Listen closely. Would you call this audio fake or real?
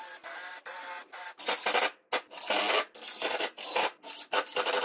real